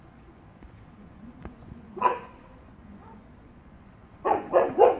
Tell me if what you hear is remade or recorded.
remade